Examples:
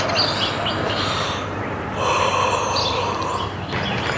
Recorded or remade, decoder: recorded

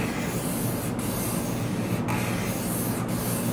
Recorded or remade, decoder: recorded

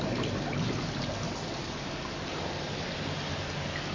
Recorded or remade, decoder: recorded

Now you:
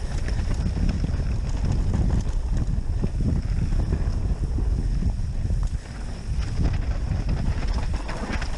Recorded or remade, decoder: recorded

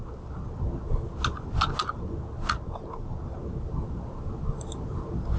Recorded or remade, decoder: recorded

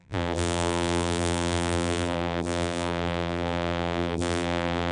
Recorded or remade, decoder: remade, vocoder, BigVGAN v2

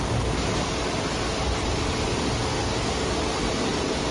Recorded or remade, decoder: recorded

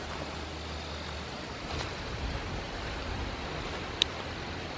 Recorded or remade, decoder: recorded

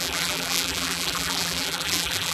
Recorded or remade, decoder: remade, vocoder, BigVGAN v2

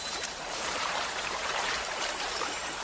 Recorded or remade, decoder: remade, vocoder, BigVGAN v2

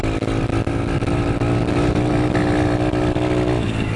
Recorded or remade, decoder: recorded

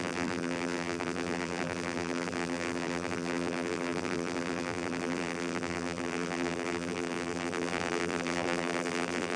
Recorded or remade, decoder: remade, vocoder, BigVGAN v2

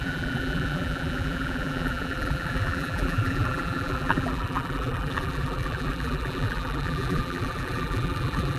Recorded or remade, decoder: remade, vocoder, BigVGAN v2